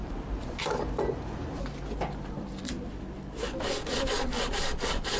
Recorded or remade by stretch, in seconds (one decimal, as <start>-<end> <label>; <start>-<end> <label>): 0.0-0.6 remade; 0.6-5.2 recorded